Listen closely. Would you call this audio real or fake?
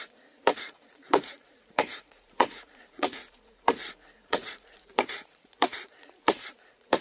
fake